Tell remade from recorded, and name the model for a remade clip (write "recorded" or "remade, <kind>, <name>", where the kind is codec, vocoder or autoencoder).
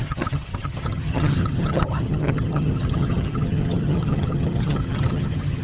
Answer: remade, vocoder, HiFi-GAN